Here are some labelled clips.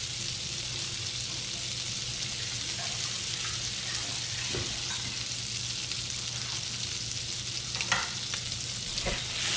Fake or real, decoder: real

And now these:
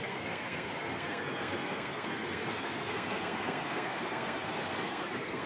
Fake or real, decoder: fake, codec, SNAC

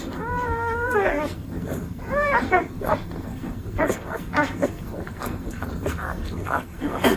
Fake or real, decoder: fake, codec, SNAC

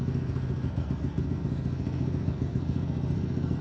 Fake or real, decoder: fake, codec, SNAC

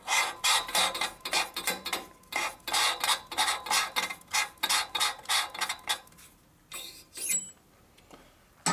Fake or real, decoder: real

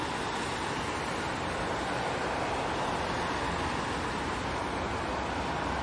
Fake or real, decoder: real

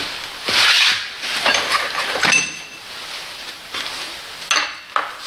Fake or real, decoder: real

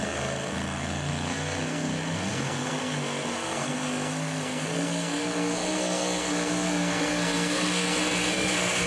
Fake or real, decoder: fake, codec, SNAC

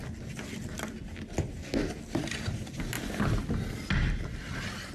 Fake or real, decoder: real